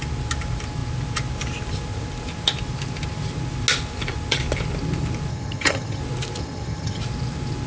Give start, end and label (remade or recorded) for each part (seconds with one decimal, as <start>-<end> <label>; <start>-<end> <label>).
0.0-5.3 recorded; 5.3-6.0 remade; 6.0-6.4 recorded; 6.4-7.0 remade; 7.0-7.7 recorded